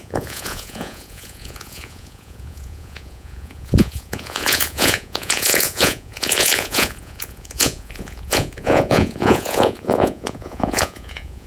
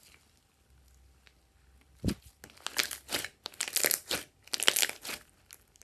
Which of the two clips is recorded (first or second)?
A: second